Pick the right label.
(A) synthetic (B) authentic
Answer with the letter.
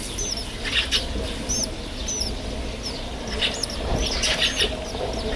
B